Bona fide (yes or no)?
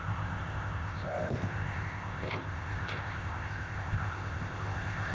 no